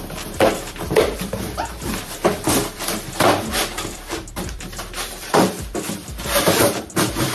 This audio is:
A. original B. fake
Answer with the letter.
B